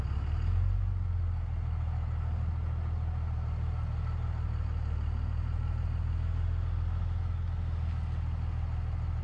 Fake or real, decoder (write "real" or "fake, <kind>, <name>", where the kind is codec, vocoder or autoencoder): real